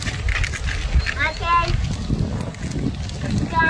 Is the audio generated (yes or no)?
no